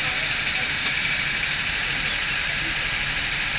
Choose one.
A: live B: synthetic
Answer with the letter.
A